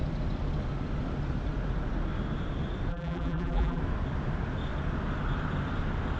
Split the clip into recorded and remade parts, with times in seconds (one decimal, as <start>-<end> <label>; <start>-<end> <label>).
0.0-2.9 recorded; 2.9-3.8 remade; 3.8-6.2 recorded